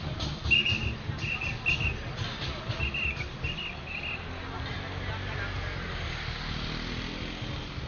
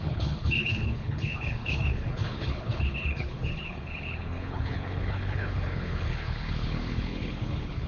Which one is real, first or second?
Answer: first